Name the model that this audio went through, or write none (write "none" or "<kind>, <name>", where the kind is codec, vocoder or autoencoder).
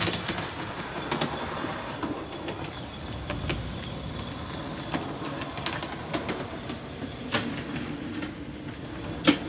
none